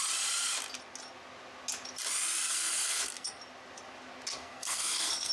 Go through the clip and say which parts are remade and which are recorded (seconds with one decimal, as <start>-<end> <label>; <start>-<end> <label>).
0.0-2.5 recorded; 2.5-3.4 remade; 3.4-4.3 recorded; 4.3-5.3 remade